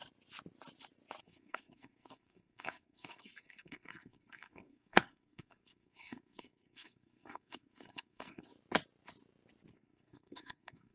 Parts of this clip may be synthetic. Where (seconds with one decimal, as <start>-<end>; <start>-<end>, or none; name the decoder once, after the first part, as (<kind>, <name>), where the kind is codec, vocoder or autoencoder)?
1.2-8.5 (codec, SNAC); 9.7-10.9